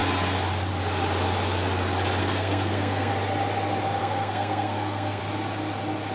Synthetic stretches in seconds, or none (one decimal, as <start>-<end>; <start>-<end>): 2.2-3.1; 4.0-5.2